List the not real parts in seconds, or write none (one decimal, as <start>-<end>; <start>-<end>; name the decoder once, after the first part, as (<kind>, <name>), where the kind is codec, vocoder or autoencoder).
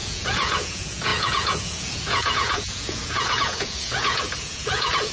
0.0-5.1 (vocoder, Vocos)